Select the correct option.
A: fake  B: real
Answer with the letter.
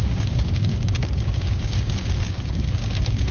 A